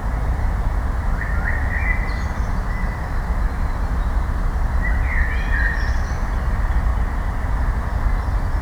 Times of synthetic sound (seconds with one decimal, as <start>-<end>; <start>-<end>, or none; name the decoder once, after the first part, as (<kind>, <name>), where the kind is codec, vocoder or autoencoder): none